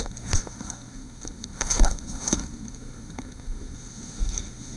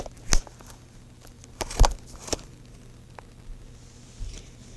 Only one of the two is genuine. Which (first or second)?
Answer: second